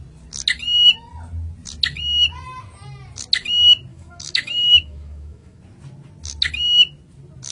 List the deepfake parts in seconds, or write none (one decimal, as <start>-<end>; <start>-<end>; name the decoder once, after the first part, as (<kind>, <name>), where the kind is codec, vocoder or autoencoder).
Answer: 3.9-5.6 (autoencoder, DAC-VAE)